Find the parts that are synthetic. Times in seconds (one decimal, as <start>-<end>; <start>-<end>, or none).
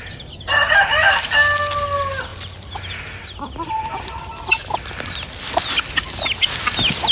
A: none